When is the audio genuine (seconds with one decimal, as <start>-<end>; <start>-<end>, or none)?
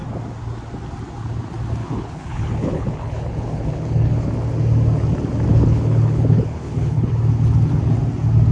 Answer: 0.0-1.8; 4.3-5.5; 7.1-8.5